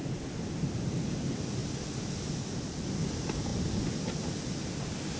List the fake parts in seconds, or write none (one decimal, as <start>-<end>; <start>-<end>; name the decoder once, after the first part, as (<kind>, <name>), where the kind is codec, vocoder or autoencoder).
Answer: none